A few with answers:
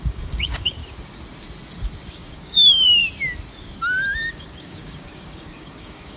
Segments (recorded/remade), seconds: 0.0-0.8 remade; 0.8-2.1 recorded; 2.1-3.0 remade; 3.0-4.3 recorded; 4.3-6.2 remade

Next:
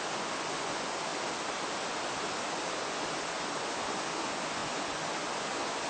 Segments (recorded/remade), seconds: 0.0-1.1 remade; 1.1-2.8 recorded; 2.8-5.9 remade

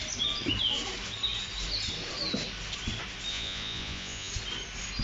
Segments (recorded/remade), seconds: 0.0-3.3 recorded; 3.3-4.3 remade; 4.3-5.0 recorded